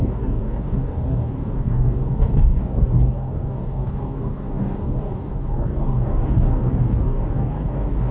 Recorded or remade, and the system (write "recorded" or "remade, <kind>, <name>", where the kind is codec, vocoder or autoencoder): remade, codec, DAC